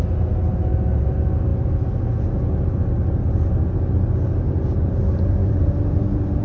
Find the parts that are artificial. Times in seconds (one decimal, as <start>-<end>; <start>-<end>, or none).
none